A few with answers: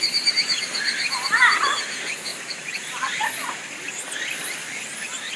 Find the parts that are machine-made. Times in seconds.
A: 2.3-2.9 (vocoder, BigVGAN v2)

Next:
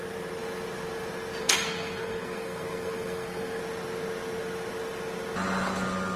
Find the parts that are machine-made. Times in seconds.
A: 1.4-3.6 (codec, SNAC)

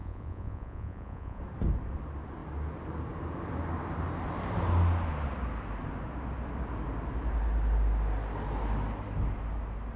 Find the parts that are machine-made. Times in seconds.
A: 0.0-1.4 (vocoder, Vocos)

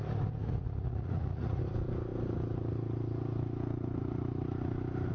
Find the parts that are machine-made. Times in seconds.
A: 0.4-1.6 (vocoder, Vocos)

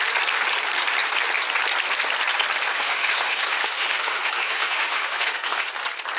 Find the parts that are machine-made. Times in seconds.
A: 2.7-5.7 (autoencoder, DAC-VAE)

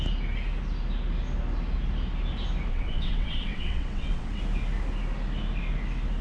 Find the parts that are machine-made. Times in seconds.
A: 2.7-4.4 (vocoder, WaveNeXt)